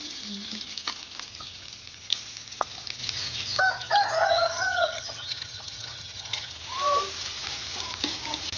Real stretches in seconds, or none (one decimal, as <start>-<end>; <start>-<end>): 0.0-4.2; 6.5-8.6